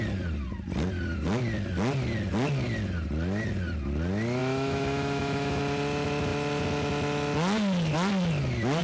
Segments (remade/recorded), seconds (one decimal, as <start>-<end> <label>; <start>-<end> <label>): 0.0-4.4 recorded; 4.4-5.6 remade; 5.6-8.8 recorded